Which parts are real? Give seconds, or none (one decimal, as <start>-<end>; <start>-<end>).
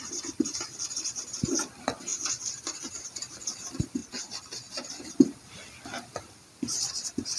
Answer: 0.0-7.4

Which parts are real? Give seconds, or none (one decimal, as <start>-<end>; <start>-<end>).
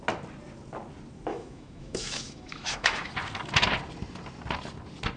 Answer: 0.0-1.3; 3.1-5.2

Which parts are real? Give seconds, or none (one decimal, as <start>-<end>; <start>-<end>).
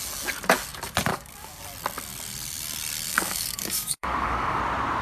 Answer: 0.0-1.1; 1.6-3.1; 4.6-5.0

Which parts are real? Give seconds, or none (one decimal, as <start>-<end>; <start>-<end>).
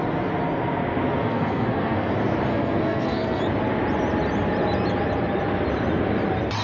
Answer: 0.0-1.2; 2.1-2.5; 3.4-6.6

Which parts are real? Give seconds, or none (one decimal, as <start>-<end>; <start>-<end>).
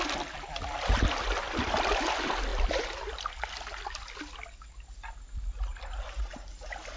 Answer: 0.0-7.0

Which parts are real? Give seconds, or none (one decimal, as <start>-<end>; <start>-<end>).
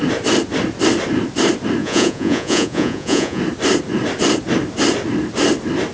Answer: 0.0-1.8; 3.4-5.9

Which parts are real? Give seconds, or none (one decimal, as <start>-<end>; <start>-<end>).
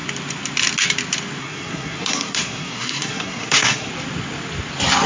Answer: 0.0-1.4; 3.9-5.1